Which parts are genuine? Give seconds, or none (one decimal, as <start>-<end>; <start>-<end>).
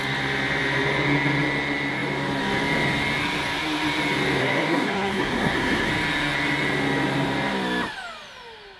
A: 0.0-4.4; 5.9-8.8